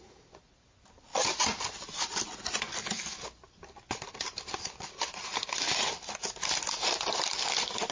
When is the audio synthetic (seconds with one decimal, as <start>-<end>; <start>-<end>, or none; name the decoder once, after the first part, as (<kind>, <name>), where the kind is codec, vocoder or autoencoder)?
none